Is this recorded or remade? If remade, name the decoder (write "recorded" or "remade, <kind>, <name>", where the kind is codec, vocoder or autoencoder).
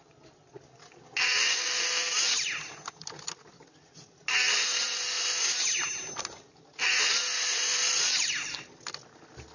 recorded